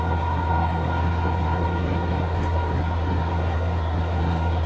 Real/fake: fake